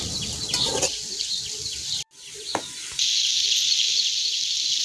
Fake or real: real